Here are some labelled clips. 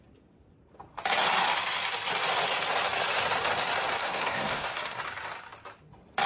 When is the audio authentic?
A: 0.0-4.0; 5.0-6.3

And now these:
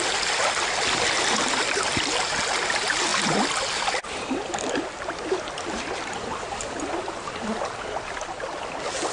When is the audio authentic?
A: 0.0-9.1

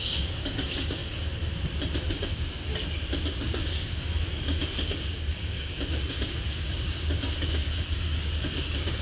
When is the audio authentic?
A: 1.0-2.1; 2.7-3.3